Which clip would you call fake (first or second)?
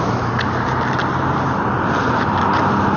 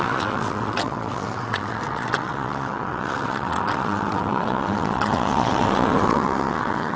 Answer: second